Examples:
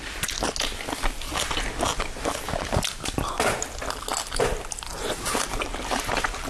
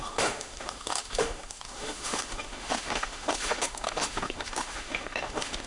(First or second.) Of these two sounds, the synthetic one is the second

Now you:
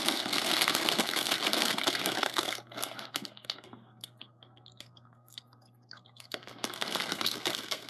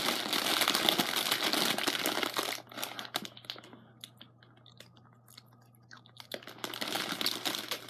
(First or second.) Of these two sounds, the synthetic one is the first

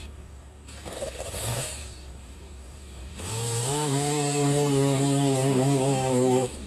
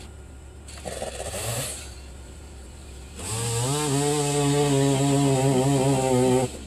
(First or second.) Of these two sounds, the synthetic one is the first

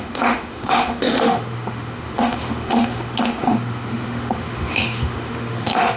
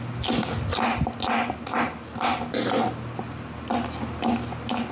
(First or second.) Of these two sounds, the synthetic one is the first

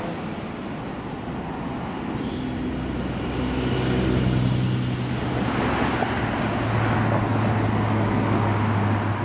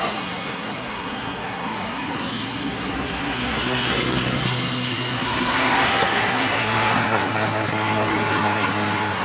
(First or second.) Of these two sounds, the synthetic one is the second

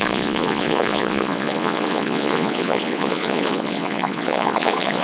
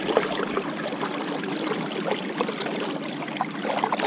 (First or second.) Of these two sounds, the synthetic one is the first